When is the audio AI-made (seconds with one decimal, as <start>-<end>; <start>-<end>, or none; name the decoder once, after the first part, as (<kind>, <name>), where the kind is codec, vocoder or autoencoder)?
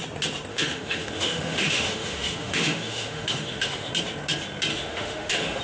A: 0.5-3.9 (autoencoder, DAC-VAE); 4.7-5.6